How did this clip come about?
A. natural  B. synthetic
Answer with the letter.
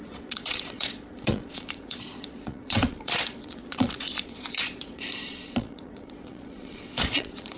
B